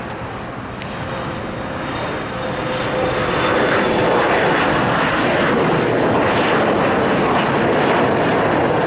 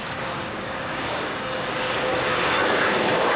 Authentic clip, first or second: first